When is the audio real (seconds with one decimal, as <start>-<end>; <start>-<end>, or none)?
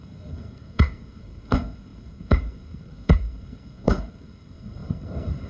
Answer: none